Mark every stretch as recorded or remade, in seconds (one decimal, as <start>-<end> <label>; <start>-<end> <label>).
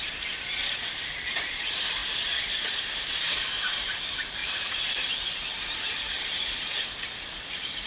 0.0-0.6 remade; 0.6-1.3 recorded; 1.3-4.4 remade; 4.4-5.9 recorded; 5.9-7.9 remade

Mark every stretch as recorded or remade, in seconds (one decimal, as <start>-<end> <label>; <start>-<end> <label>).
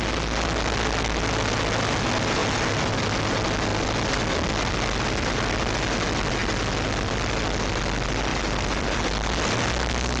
0.0-8.3 recorded; 8.3-9.0 remade; 9.0-10.2 recorded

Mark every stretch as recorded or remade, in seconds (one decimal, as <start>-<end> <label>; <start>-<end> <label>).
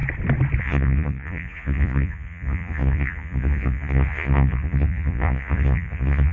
0.0-0.6 recorded; 0.6-6.3 remade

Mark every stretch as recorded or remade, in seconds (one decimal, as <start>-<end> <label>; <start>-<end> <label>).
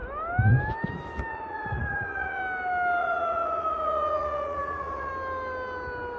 0.0-1.3 recorded; 1.3-2.4 remade; 2.4-3.0 recorded; 3.0-5.1 remade; 5.1-6.2 recorded